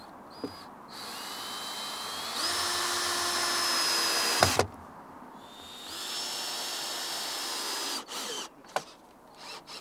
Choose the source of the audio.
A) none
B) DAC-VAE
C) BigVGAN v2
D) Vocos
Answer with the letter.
A